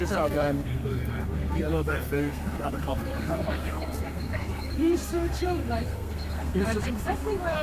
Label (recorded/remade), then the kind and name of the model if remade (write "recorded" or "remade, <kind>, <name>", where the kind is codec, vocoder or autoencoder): remade, codec, SNAC